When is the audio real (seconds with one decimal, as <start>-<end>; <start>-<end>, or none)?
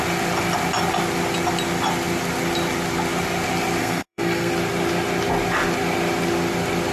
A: 0.0-3.8; 4.5-6.9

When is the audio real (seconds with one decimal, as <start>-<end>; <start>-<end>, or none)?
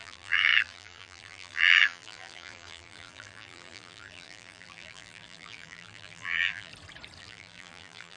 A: 6.7-7.2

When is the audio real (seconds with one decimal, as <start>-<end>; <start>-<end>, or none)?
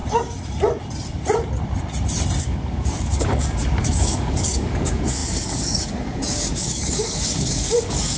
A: 0.0-2.4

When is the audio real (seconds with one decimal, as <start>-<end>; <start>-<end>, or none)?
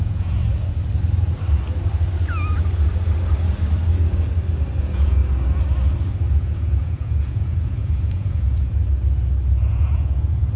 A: 0.4-4.8; 5.2-6.3; 8.8-9.7